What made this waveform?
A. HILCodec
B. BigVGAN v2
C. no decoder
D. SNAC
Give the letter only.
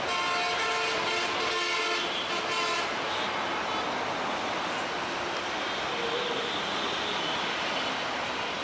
C